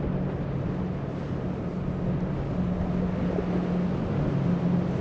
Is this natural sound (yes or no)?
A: yes